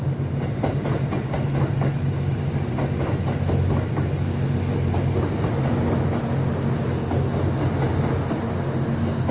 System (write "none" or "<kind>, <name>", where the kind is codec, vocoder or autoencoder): none